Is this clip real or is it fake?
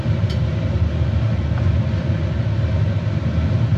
real